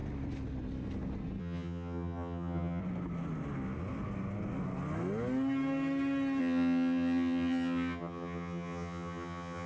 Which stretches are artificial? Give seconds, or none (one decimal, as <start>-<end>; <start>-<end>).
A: 1.4-2.8; 6.4-9.7